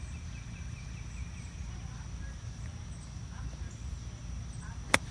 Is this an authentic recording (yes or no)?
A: yes